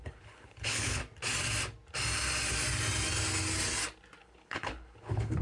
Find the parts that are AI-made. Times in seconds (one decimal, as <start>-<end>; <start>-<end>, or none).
0.0-1.0; 4.2-5.4